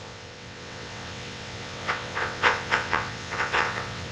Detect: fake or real fake